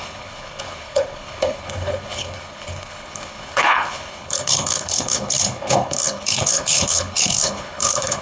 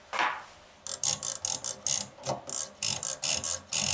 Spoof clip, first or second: first